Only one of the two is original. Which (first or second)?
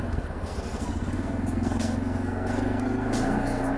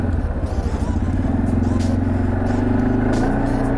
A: second